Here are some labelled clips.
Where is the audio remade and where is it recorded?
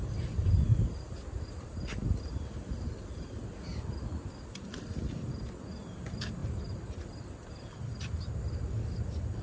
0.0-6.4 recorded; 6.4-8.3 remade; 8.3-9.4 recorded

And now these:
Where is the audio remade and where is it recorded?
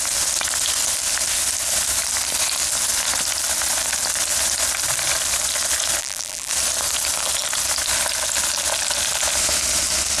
0.0-6.0 recorded; 6.0-6.5 remade; 6.5-10.2 recorded